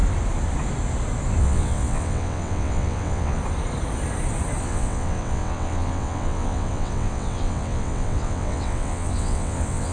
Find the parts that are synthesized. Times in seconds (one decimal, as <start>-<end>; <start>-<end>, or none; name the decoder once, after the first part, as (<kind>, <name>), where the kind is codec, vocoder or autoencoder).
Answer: 1.4-3.4 (vocoder, WaveNeXt); 4.6-9.9